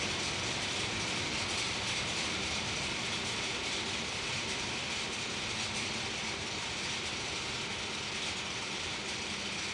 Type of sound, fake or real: fake